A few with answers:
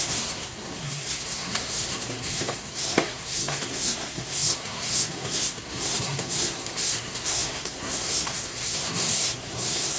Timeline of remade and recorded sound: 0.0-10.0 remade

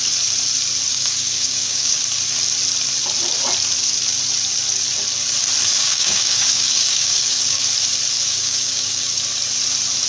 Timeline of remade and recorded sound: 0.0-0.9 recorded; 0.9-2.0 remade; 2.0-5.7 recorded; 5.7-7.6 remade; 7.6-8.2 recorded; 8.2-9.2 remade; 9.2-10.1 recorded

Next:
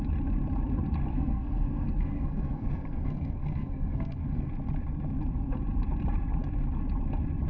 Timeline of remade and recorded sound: 0.0-1.1 recorded; 1.1-4.5 remade; 4.5-7.5 recorded

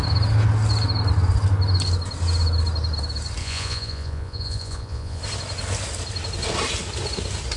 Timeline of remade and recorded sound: 0.0-3.4 recorded; 3.4-5.2 remade; 5.2-7.6 recorded

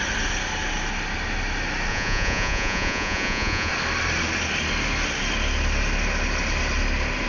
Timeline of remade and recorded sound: 0.0-1.9 recorded; 1.9-3.7 remade; 3.7-7.3 recorded